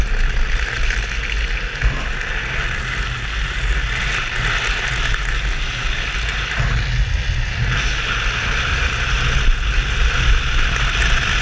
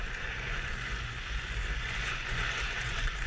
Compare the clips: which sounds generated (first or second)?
second